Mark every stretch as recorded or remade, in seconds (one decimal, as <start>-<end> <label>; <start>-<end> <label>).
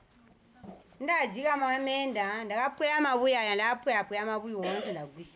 0.0-5.4 recorded